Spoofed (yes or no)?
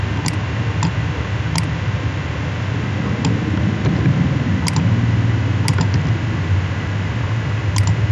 no